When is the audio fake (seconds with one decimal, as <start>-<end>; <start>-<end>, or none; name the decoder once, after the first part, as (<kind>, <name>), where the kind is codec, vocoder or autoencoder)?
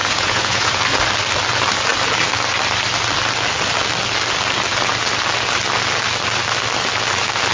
0.0-0.7 (vocoder, Vocos)